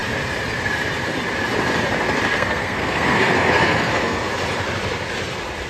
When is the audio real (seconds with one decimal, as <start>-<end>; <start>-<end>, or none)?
0.0-2.3; 4.3-5.7